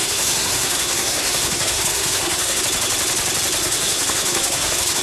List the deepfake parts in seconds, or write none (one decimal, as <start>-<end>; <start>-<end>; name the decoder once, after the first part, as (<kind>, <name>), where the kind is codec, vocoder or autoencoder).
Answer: 0.0-2.6 (codec, SNAC); 3.6-5.0